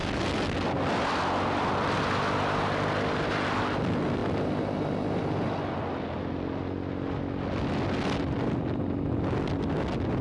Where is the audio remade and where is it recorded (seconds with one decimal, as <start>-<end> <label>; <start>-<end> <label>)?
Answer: 0.0-10.2 recorded